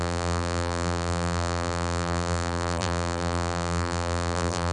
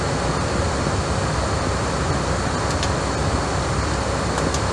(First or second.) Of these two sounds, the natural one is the second